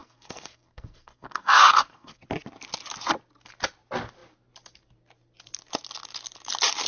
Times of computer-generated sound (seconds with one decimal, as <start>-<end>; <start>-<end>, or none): 0.0-2.2